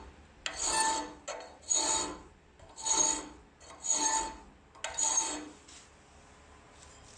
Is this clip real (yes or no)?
yes